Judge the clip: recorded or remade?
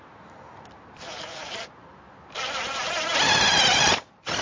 remade